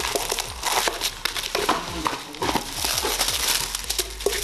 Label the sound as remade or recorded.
recorded